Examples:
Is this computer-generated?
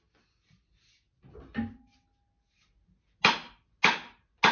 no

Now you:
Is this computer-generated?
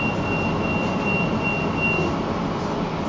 no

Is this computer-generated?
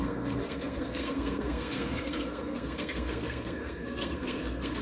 yes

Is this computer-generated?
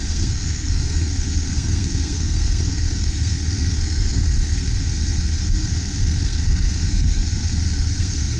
yes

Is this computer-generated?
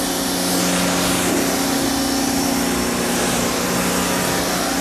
no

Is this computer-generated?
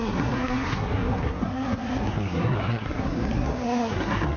yes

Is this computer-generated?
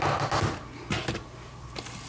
no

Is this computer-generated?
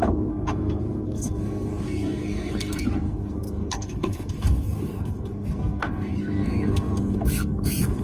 yes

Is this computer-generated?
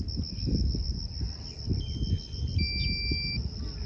no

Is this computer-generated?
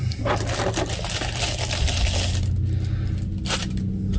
no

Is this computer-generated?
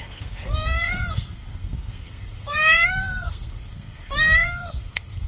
yes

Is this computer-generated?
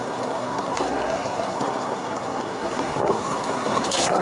yes